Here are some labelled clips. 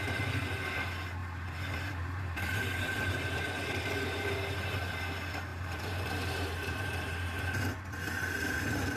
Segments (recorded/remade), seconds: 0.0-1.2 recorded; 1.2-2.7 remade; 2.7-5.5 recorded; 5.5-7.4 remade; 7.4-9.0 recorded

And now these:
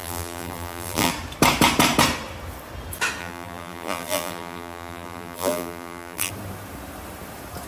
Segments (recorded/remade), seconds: 0.0-1.1 remade; 1.1-3.2 recorded; 3.2-6.3 remade; 6.3-7.7 recorded

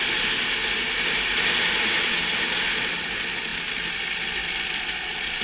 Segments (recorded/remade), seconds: 0.0-3.5 recorded; 3.5-4.0 remade; 4.0-4.4 recorded; 4.4-5.4 remade

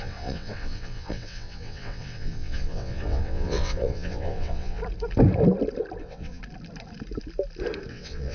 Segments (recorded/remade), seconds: 0.0-4.8 remade; 4.8-6.0 recorded; 6.0-6.4 remade; 6.4-7.9 recorded; 7.9-8.3 remade

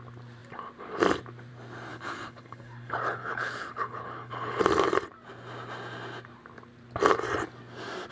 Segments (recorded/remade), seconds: 0.0-1.9 recorded; 1.9-4.6 remade; 4.6-8.1 recorded

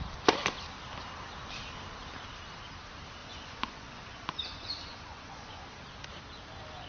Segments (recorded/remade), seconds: 0.0-3.2 recorded; 3.2-5.6 remade; 5.6-6.9 recorded